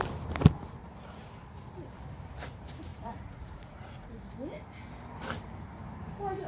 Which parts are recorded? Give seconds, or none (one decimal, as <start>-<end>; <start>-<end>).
0.0-0.8; 1.4-2.9; 4.1-6.5